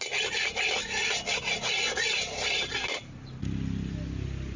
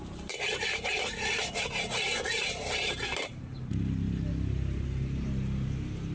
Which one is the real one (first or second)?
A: first